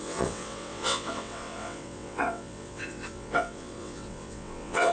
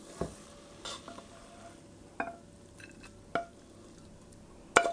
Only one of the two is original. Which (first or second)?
second